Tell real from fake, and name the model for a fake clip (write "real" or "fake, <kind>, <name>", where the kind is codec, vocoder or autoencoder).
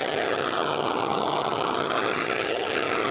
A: fake, vocoder, HiFi-GAN